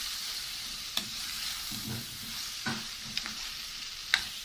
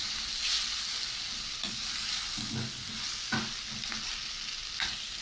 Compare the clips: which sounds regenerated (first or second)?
first